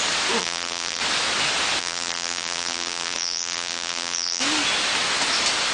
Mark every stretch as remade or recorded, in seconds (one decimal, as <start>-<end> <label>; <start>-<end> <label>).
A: 0.0-0.4 recorded; 0.4-1.0 remade; 1.0-1.8 recorded; 1.8-4.4 remade; 4.4-5.7 recorded